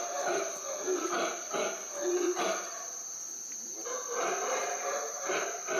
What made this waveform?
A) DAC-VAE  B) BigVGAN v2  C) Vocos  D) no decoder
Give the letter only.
B